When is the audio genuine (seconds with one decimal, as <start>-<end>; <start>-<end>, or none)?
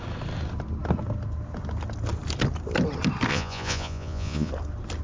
0.0-3.3; 4.5-5.0